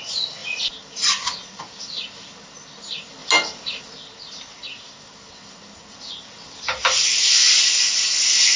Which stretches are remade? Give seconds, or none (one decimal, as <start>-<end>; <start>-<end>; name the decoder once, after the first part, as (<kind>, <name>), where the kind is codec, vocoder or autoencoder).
none